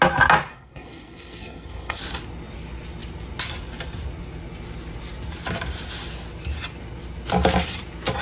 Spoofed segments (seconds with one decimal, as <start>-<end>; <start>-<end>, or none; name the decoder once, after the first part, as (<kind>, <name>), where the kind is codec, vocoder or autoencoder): 0.5-2.0 (codec, SNAC)